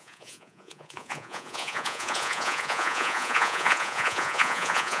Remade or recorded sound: remade